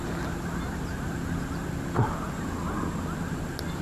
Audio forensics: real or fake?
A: real